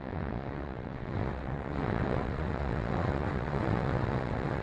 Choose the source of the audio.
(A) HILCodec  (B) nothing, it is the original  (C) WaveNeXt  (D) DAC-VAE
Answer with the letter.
C